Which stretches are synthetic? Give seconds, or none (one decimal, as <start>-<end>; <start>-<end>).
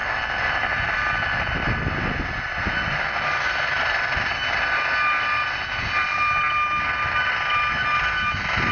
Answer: none